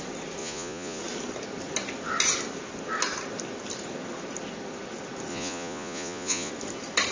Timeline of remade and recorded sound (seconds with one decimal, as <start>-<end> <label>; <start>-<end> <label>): 0.0-0.4 recorded; 0.4-1.0 remade; 1.0-5.3 recorded; 5.3-6.5 remade; 6.5-7.1 recorded